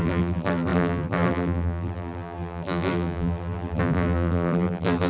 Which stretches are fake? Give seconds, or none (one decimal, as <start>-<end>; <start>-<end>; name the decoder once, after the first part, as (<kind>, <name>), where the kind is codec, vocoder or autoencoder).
0.0-5.1 (vocoder, BigVGAN v2)